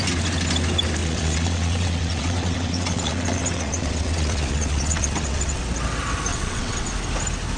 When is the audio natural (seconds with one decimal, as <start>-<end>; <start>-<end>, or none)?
0.0-1.0; 5.6-6.3; 6.9-7.6